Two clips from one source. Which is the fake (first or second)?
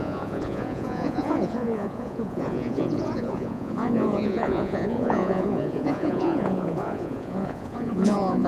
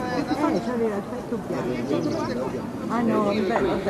first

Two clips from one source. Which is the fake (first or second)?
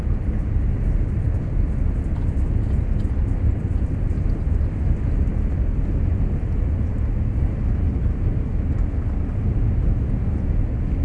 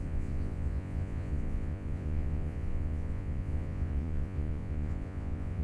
second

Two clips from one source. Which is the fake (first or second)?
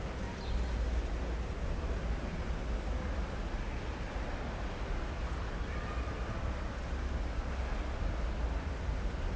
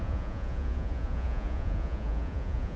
second